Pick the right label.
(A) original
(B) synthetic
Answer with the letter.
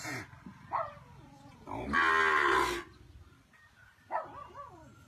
A